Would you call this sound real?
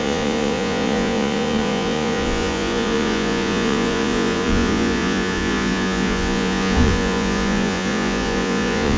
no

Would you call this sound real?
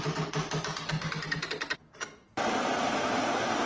yes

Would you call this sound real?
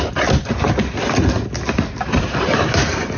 yes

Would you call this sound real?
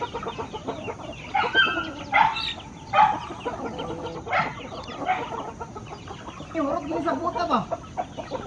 yes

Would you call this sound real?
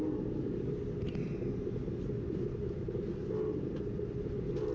yes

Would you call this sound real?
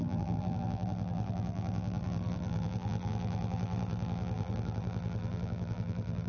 no